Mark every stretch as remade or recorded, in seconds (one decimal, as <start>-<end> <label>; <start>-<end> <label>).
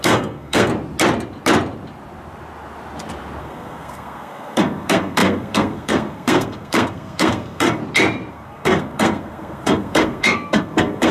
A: 0.0-0.7 remade; 0.7-3.4 recorded; 3.4-7.8 remade; 7.8-8.3 recorded; 8.3-11.1 remade